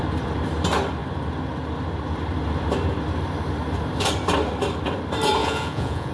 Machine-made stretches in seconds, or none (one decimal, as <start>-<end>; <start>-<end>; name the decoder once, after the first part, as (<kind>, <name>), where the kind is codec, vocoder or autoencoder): 5.4-6.1 (vocoder, Vocos)